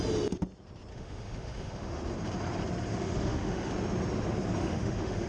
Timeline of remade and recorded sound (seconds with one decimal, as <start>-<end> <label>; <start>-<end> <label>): 0.0-0.9 recorded; 0.9-2.0 remade; 2.0-2.9 recorded; 2.9-3.7 remade; 3.7-4.6 recorded; 4.6-5.3 remade